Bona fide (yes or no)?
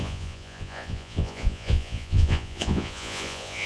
no